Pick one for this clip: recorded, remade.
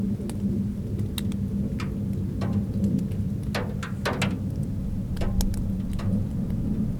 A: recorded